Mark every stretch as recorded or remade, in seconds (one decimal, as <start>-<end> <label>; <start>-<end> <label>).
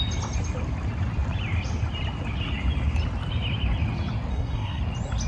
0.0-4.3 recorded; 4.3-4.8 remade; 4.8-5.3 recorded